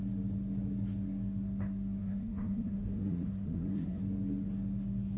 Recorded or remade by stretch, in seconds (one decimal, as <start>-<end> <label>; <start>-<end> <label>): 0.0-2.0 recorded; 2.0-4.0 remade; 4.0-5.2 recorded